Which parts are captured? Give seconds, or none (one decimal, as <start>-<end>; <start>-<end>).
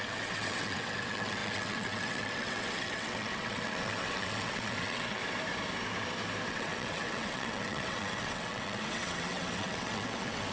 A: 5.2-6.5